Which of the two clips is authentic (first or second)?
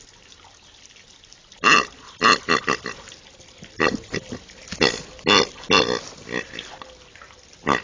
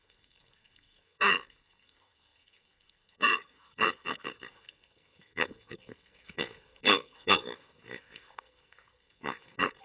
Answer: first